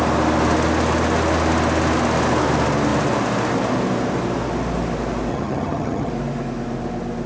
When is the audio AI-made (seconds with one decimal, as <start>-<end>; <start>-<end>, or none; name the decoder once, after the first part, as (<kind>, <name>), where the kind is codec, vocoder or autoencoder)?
5.3-6.1 (vocoder, HiFi-GAN)